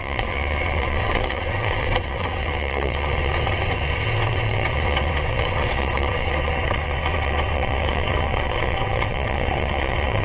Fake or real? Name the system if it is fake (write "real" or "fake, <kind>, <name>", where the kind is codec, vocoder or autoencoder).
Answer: fake, vocoder, WaveNeXt